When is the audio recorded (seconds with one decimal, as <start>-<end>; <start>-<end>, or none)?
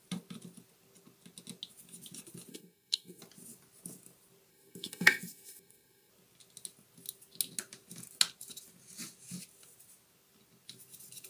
0.0-2.5; 3.2-4.5; 6.1-11.3